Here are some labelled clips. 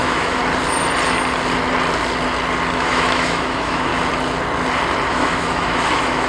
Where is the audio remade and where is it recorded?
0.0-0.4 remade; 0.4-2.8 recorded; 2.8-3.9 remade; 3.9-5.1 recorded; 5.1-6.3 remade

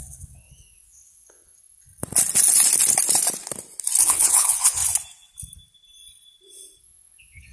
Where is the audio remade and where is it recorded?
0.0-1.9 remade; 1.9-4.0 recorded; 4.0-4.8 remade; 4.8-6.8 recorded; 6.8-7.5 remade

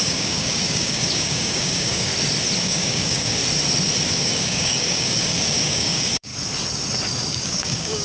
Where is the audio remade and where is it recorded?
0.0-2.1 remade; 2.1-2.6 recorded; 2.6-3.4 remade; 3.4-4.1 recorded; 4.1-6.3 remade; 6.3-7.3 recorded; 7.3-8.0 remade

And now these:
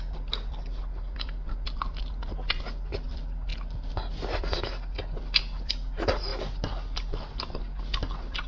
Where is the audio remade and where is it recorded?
0.0-8.5 recorded

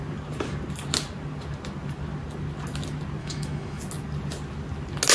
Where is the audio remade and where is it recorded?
0.0-3.2 recorded; 3.2-3.8 remade; 3.8-5.1 recorded

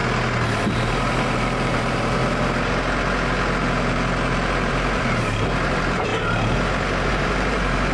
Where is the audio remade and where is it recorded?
0.0-0.6 recorded; 0.6-2.2 remade; 2.2-4.7 recorded; 4.7-6.1 remade; 6.1-7.1 recorded; 7.1-7.9 remade